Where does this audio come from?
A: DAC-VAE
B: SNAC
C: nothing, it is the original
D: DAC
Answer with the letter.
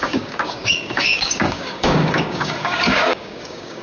D